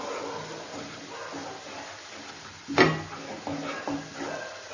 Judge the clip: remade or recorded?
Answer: recorded